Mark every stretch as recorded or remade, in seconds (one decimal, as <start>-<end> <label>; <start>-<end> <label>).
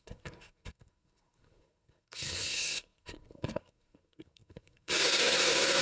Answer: 0.0-5.8 remade